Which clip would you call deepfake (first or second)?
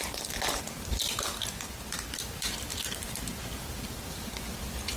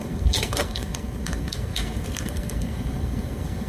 second